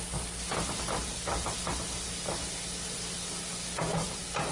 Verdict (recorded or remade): recorded